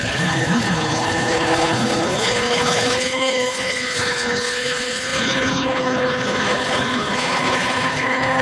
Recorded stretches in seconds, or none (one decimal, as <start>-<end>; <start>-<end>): none